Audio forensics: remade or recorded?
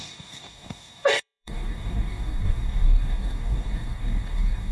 remade